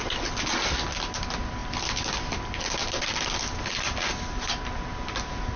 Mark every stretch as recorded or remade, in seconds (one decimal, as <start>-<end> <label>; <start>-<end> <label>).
0.0-5.6 recorded